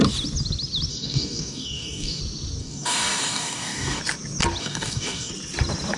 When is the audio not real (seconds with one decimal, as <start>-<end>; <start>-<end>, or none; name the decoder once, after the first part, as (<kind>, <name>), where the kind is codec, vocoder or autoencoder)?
0.9-2.2 (codec, DAC); 2.6-4.0; 4.6-5.3